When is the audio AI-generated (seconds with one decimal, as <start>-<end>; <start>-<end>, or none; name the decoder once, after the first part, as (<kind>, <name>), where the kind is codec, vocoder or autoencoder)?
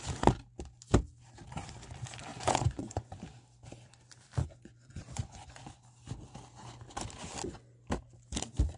2.3-3.1 (vocoder, Vocos); 4.4-5.6